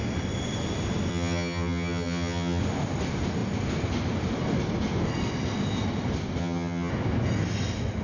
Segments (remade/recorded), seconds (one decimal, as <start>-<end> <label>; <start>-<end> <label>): 0.0-1.1 recorded; 1.1-2.6 remade; 2.6-6.4 recorded; 6.4-6.9 remade; 6.9-8.0 recorded